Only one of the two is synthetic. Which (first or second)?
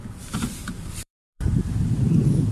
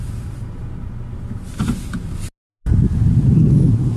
first